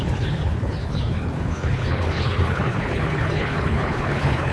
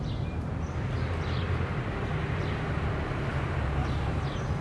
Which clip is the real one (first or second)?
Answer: second